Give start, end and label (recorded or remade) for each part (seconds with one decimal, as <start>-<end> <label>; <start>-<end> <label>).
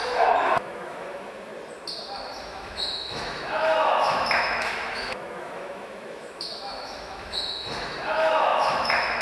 0.0-1.5 remade; 1.5-2.4 recorded; 2.4-9.2 remade